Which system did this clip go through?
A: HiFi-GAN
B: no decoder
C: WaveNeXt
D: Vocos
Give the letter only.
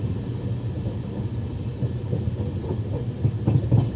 B